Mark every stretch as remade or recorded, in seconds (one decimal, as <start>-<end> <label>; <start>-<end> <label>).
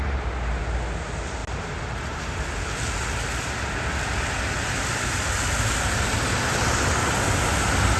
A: 0.0-8.0 recorded